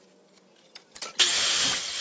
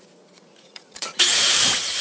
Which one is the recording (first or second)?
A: first